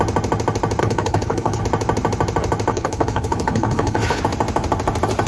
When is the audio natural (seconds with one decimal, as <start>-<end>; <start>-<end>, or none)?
0.0-0.8; 1.6-2.7; 4.2-5.3